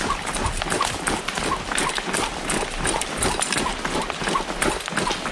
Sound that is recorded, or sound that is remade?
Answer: recorded